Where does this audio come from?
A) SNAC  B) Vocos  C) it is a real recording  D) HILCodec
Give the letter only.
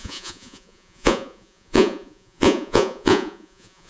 B